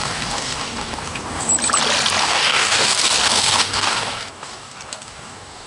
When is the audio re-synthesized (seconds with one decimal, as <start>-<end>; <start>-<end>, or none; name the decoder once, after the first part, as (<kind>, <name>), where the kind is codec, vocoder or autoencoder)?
0.0-1.5 (codec, DAC); 2.2-5.7